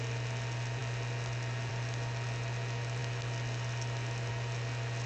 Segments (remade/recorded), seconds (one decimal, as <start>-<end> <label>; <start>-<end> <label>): 0.0-5.1 recorded